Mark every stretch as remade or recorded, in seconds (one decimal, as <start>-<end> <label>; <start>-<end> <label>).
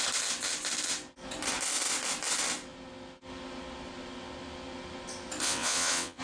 0.0-5.4 recorded; 5.4-6.2 remade